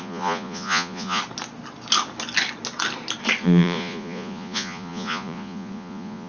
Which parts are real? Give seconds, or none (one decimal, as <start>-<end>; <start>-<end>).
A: 1.2-3.4